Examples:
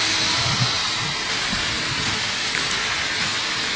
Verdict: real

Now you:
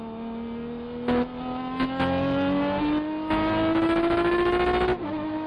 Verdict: real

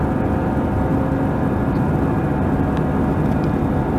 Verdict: real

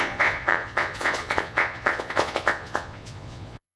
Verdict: fake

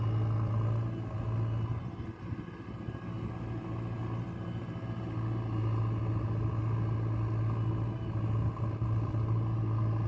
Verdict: real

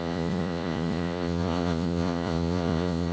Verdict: fake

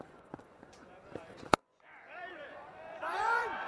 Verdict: fake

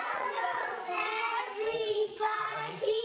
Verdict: fake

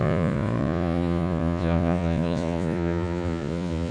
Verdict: fake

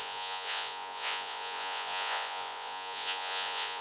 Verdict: fake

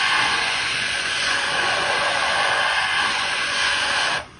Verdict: fake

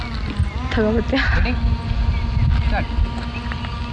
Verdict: real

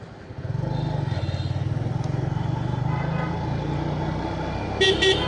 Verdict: real